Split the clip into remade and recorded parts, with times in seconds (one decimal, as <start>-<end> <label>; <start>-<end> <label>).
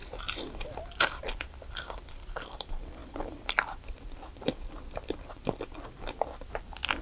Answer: 0.0-7.0 remade